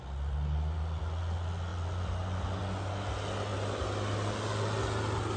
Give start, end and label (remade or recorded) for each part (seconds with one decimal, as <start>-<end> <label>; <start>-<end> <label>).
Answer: 0.0-5.4 recorded